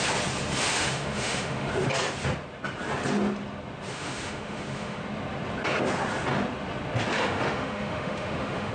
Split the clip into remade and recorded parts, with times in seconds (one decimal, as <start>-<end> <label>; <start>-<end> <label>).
0.0-0.7 recorded; 0.7-1.7 remade; 1.7-3.9 recorded; 3.9-5.0 remade; 5.0-7.1 recorded; 7.1-8.7 remade